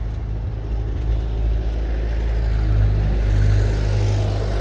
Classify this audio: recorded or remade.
recorded